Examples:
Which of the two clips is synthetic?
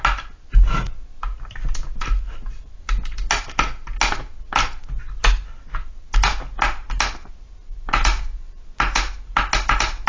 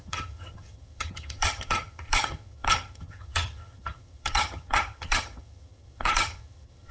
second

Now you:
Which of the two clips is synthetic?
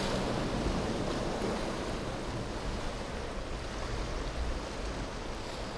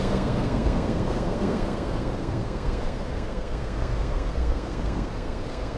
second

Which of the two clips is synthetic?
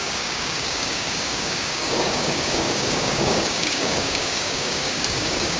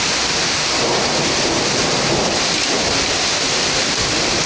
first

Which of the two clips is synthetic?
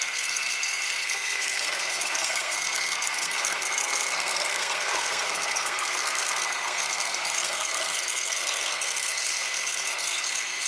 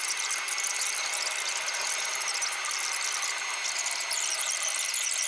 first